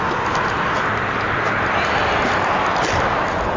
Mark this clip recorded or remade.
recorded